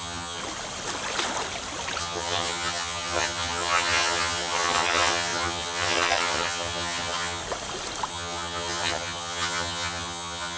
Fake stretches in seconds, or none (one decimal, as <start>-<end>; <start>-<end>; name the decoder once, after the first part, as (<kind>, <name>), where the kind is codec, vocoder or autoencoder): 0.0-0.4 (vocoder, HiFi-GAN); 2.0-7.4; 8.1-10.6